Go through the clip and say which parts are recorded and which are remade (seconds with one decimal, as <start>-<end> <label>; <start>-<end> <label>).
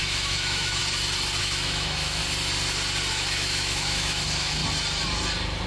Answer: 0.0-0.8 remade; 0.8-1.4 recorded; 1.4-2.2 remade; 2.2-3.1 recorded; 3.1-4.6 remade; 4.6-5.7 recorded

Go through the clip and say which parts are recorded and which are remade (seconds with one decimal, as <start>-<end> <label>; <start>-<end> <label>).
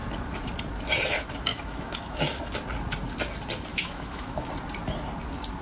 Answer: 0.0-1.5 recorded; 1.5-2.5 remade; 2.5-3.7 recorded; 3.7-4.5 remade; 4.5-5.6 recorded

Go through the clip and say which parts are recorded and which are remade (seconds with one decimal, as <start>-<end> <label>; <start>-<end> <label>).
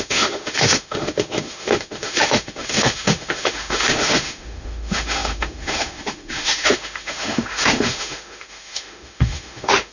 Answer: 0.0-9.9 remade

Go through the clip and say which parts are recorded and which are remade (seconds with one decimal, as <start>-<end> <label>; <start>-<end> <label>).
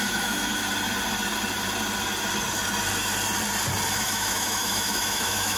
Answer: 0.0-0.5 remade; 0.5-3.9 recorded; 3.9-5.6 remade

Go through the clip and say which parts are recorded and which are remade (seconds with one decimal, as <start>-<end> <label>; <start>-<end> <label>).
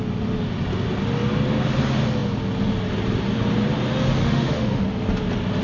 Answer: 0.0-4.2 recorded; 4.2-4.8 remade; 4.8-5.6 recorded